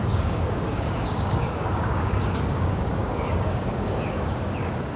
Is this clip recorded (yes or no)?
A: no